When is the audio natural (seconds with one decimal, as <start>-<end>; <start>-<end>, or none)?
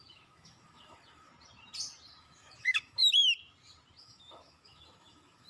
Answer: 1.3-2.2; 3.0-4.0